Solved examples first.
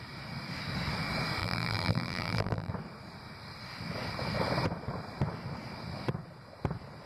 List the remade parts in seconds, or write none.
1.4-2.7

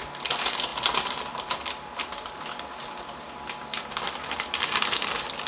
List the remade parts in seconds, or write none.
0.7-4.0

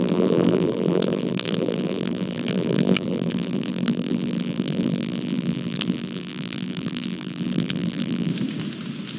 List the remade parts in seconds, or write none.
0.0-8.3

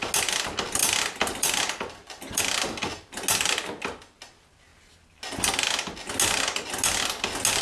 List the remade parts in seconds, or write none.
0.8-2.4

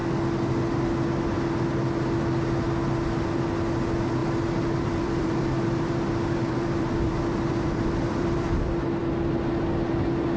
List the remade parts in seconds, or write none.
4.2-8.6

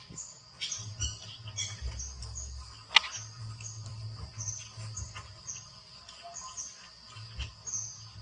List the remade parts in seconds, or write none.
3.9-7.5